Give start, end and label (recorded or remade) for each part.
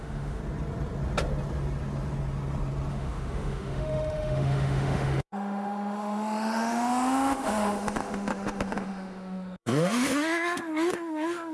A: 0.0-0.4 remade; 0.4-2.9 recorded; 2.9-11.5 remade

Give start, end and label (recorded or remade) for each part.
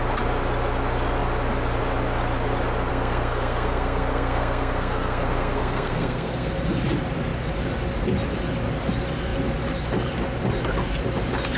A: 0.0-2.9 recorded; 2.9-6.5 remade; 6.5-11.6 recorded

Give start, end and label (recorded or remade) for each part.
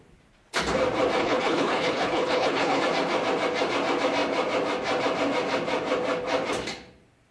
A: 0.0-1.2 recorded; 1.2-2.8 remade; 2.8-7.3 recorded